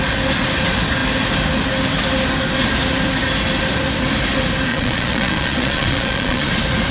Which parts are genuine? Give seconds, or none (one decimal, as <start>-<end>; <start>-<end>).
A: 0.0-4.7; 6.5-6.9